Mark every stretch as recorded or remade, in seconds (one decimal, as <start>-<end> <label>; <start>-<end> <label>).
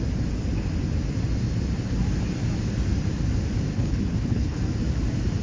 0.0-3.7 recorded; 3.7-4.6 remade; 4.6-5.4 recorded